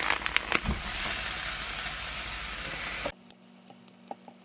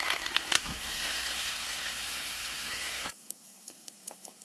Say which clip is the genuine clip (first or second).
first